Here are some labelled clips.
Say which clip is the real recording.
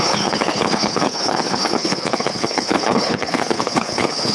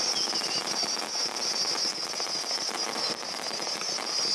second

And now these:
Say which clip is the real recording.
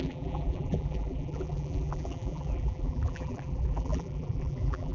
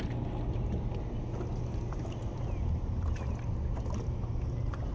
second